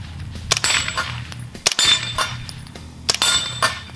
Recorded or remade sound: recorded